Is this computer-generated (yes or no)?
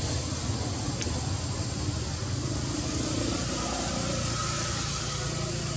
no